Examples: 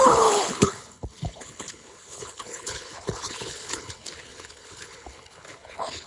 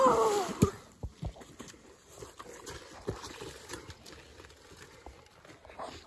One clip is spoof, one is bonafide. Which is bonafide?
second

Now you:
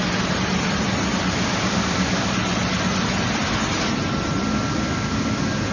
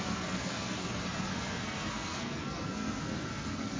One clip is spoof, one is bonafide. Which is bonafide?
first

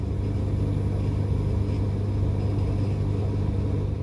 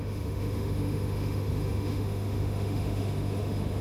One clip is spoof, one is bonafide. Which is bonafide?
first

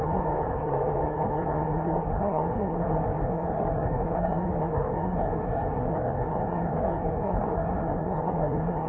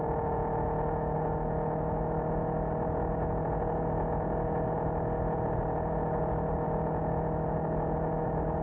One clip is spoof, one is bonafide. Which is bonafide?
second